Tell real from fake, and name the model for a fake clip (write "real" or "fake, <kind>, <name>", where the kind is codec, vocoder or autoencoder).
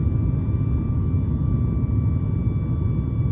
real